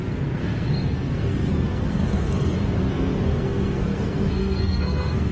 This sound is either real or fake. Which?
fake